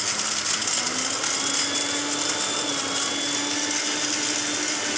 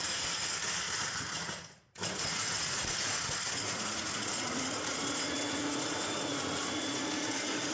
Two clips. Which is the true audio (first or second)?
first